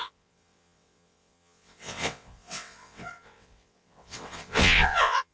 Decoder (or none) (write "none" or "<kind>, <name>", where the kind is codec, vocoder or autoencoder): vocoder, WaveNeXt